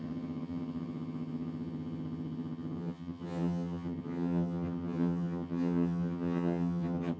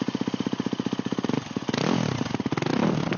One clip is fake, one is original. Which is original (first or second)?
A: second